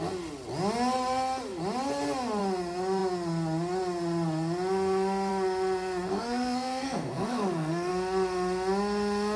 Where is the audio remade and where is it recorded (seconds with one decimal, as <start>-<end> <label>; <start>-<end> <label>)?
0.0-6.1 recorded; 6.1-7.9 remade; 7.9-9.4 recorded